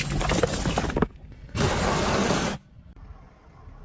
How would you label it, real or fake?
real